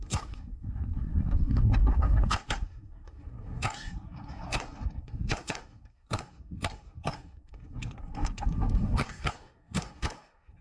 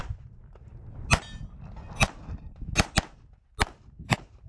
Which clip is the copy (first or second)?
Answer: first